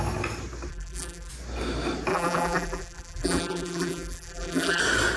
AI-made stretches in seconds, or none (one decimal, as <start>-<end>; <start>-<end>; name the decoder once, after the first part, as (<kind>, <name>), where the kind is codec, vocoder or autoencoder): 0.7-1.3 (vocoder, BigVGAN v2); 2.1-4.8